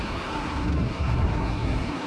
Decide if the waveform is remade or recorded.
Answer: remade